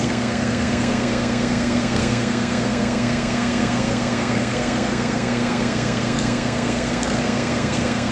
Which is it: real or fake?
fake